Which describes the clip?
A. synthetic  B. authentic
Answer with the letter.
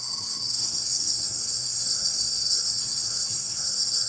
A